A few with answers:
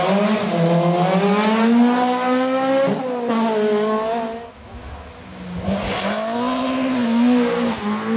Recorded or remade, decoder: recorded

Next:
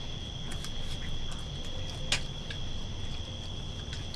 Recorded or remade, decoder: recorded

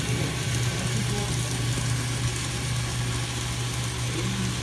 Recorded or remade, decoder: recorded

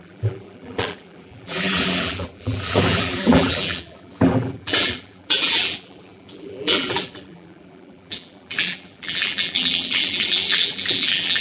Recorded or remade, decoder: remade, vocoder, BigVGAN v2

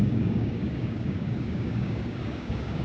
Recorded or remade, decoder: remade, codec, DAC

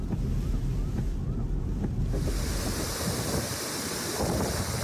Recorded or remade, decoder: recorded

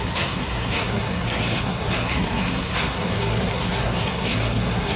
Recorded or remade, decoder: remade, codec, SNAC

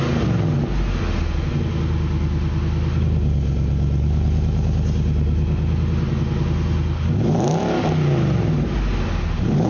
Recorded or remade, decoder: recorded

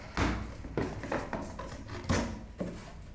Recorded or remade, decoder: recorded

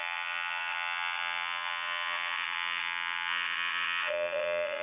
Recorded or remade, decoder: remade, vocoder, WaveNeXt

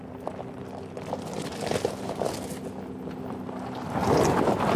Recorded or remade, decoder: recorded